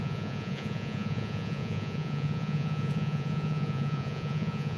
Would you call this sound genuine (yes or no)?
no